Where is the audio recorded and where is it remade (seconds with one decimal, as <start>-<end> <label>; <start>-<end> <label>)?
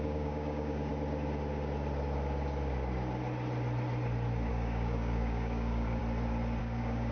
0.0-0.9 remade; 0.9-4.5 recorded; 4.5-6.0 remade; 6.0-6.6 recorded; 6.6-7.1 remade